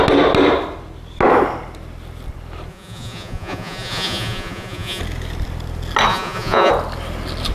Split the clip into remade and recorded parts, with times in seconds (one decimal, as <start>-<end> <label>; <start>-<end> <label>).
0.0-2.7 recorded; 2.7-5.0 remade; 5.0-6.1 recorded; 6.1-6.7 remade; 6.7-7.5 recorded